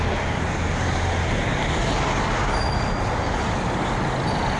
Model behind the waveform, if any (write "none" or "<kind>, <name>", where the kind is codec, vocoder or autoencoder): none